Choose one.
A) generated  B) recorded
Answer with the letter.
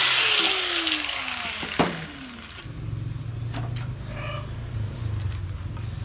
B